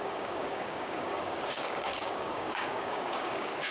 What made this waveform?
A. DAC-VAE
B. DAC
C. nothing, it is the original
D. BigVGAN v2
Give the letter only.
B